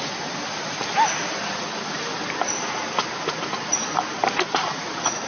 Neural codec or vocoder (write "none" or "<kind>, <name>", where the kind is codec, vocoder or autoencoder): none